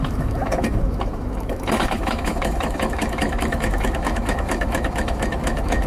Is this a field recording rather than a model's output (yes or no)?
no